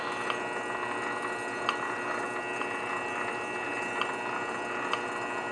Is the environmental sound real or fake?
real